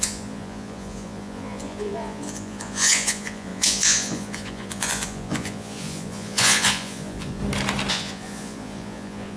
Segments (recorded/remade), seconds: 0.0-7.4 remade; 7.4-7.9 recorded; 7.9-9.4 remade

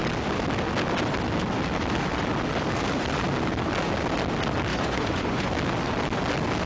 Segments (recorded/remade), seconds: 0.0-4.7 recorded; 4.7-5.5 remade; 5.5-6.7 recorded

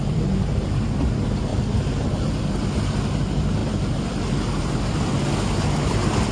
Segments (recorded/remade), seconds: 0.0-6.3 recorded

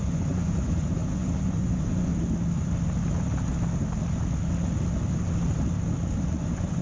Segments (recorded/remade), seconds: 0.0-2.1 remade; 2.1-6.2 recorded; 6.2-6.8 remade

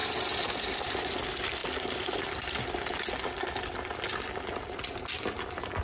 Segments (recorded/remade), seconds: 0.0-5.8 recorded